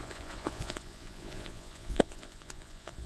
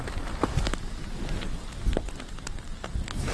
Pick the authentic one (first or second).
second